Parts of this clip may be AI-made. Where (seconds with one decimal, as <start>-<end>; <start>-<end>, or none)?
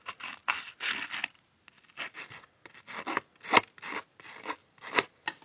4.6-5.4